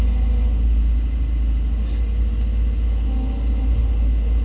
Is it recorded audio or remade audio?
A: recorded